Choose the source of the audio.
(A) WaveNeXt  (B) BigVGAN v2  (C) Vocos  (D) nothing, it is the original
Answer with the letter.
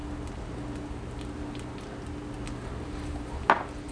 D